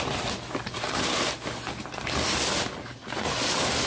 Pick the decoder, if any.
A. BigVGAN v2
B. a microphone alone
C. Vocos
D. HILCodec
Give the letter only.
B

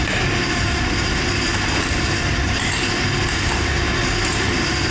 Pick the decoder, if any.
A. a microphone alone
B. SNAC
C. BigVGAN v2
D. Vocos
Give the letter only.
A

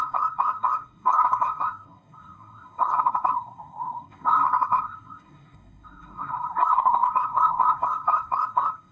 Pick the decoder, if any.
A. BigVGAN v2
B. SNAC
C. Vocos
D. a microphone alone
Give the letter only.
B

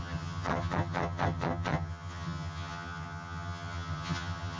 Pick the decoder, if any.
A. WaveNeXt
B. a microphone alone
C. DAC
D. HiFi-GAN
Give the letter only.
D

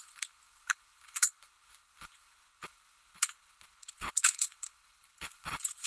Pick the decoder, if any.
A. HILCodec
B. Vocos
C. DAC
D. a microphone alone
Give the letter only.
A